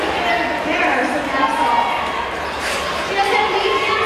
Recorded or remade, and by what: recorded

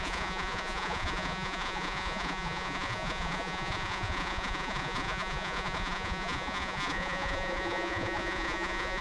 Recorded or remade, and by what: remade, vocoder, Vocos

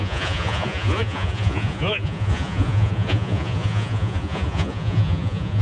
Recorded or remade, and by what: remade, vocoder, Vocos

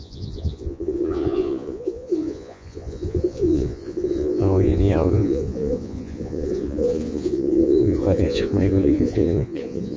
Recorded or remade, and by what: remade, vocoder, Vocos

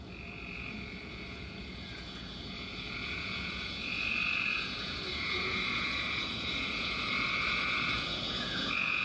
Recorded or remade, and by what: remade, vocoder, Vocos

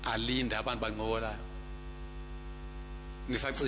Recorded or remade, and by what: recorded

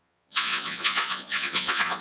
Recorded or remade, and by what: remade, vocoder, Vocos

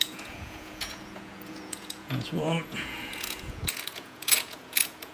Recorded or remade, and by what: remade, vocoder, Vocos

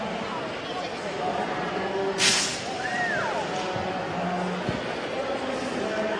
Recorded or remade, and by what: recorded